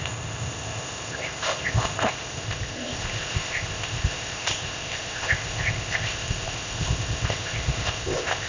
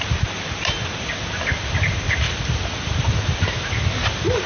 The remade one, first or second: first